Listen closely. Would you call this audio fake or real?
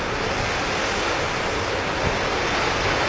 real